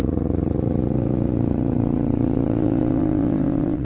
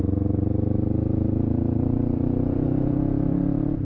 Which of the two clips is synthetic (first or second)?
first